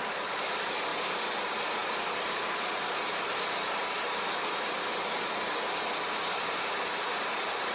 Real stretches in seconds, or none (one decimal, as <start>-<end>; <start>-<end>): 0.0-7.7